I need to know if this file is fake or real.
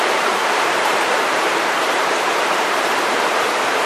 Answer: fake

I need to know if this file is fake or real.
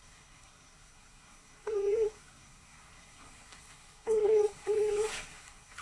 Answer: fake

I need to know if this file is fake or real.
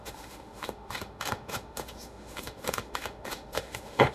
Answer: fake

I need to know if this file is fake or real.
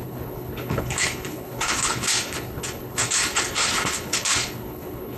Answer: fake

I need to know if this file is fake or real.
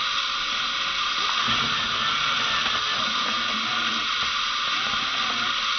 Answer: real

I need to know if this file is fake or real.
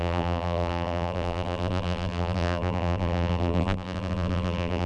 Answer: fake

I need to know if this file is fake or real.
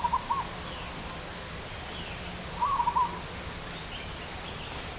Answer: real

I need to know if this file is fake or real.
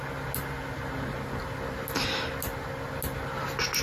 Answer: real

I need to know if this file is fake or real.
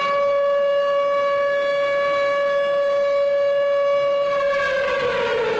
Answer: real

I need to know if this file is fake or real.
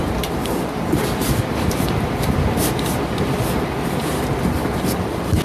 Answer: fake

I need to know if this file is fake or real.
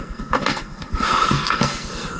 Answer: fake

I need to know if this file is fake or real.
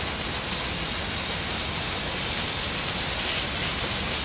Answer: real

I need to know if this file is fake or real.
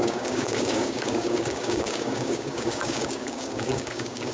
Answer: fake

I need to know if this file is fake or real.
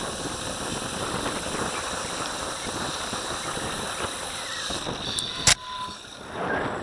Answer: real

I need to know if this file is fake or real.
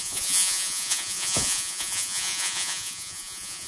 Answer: fake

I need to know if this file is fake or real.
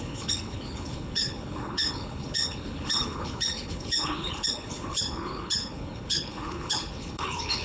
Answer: fake